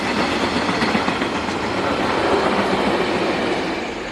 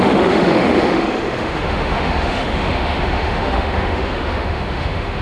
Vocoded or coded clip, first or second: second